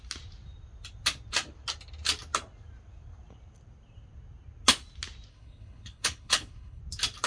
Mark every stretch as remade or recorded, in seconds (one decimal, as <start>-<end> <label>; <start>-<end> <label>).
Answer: 0.0-5.3 recorded; 5.3-6.8 remade; 6.8-7.3 recorded